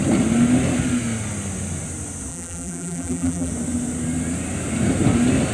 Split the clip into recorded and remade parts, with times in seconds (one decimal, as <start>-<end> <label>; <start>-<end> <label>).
0.0-2.3 recorded; 2.3-3.5 remade; 3.5-5.5 recorded